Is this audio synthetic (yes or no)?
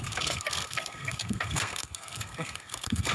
yes